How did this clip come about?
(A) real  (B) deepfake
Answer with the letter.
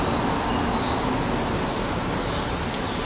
A